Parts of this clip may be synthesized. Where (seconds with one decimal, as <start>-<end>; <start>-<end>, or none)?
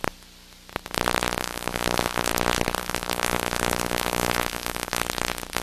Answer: 1.4-2.3; 2.8-5.0